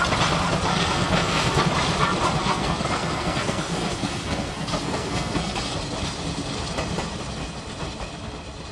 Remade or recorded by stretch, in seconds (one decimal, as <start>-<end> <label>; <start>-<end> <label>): 0.0-0.7 recorded; 0.7-1.6 remade; 1.6-2.4 recorded; 2.4-5.7 remade; 5.7-8.7 recorded